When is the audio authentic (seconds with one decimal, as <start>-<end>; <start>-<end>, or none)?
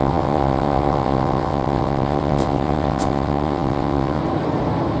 4.2-5.0